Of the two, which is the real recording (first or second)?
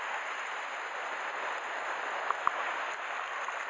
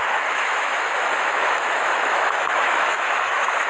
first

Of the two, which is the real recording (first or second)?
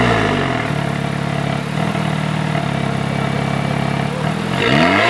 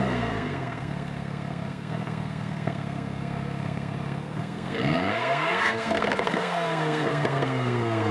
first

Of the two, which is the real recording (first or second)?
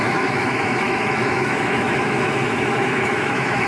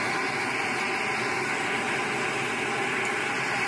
second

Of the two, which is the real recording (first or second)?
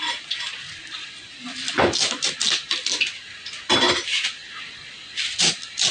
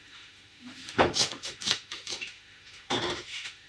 first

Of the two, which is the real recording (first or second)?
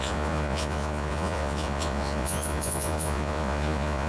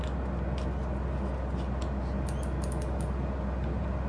second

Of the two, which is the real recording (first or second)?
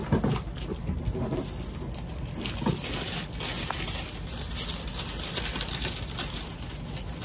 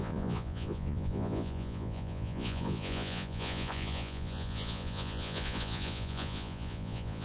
first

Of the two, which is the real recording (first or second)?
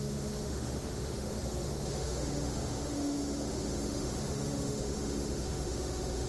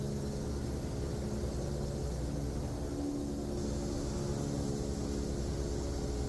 second